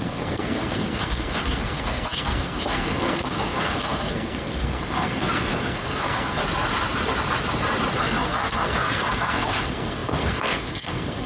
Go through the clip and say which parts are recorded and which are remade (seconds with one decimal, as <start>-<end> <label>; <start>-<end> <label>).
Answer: 0.0-6.4 remade; 6.4-8.0 recorded; 8.0-11.3 remade